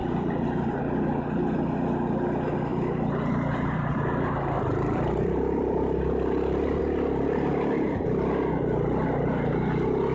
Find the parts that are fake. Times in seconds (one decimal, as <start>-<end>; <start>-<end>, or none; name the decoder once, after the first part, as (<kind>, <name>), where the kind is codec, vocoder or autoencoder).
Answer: 0.0-0.8 (vocoder, BigVGAN v2); 2.7-6.8